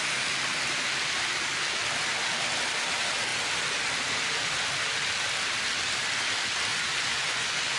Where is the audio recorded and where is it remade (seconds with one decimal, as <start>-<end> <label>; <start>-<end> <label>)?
0.0-6.7 recorded; 6.7-7.8 remade